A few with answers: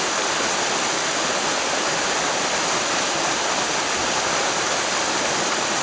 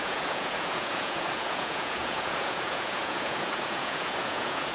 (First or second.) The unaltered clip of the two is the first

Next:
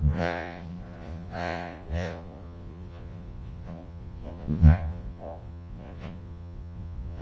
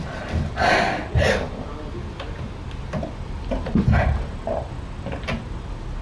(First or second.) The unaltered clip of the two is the second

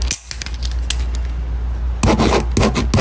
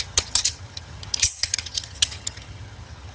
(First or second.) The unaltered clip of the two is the first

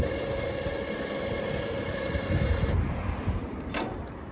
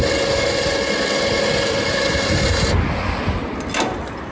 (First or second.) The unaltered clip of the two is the second